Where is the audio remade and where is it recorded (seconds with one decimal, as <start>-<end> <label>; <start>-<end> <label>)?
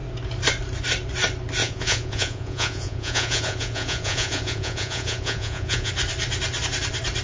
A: 0.0-1.6 recorded; 1.6-5.9 remade; 5.9-7.2 recorded